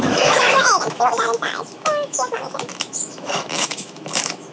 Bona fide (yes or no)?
no